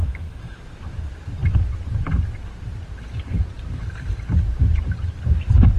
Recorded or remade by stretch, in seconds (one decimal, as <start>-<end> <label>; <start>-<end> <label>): 0.0-0.6 remade; 0.6-5.8 recorded